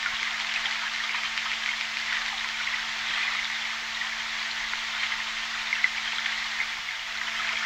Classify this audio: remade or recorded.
recorded